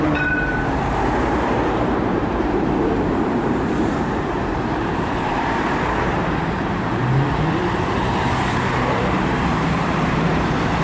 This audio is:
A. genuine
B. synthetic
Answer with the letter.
B